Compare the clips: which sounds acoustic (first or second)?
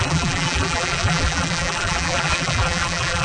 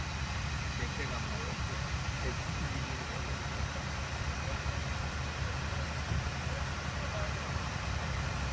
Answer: second